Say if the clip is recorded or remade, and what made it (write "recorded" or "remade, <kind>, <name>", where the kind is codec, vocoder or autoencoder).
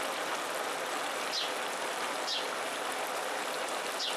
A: recorded